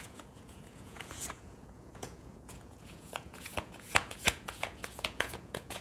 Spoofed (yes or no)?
yes